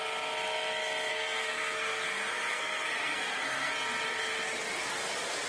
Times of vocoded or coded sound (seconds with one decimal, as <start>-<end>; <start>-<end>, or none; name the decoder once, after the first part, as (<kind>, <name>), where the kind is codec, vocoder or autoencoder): 1.1-3.7 (codec, SNAC)